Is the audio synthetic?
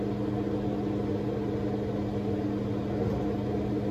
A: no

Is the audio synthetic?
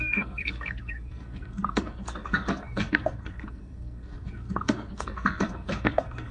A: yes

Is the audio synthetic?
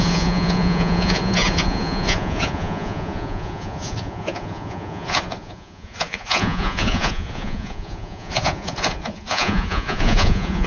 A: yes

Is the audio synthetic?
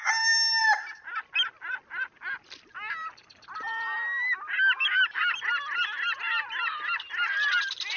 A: no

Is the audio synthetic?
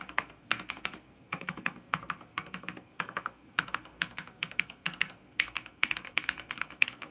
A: yes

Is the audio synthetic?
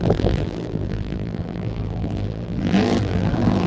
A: yes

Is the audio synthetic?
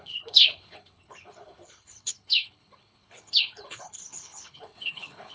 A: yes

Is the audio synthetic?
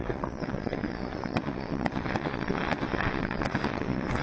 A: yes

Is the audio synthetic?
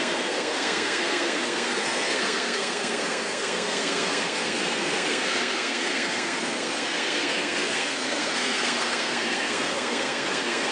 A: yes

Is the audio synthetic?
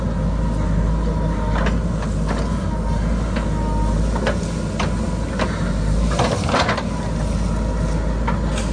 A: no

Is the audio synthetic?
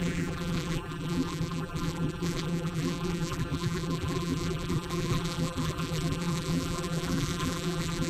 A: yes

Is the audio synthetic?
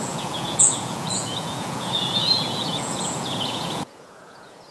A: yes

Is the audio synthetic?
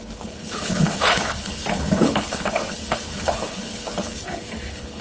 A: yes